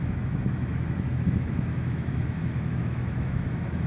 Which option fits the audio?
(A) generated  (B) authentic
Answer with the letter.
A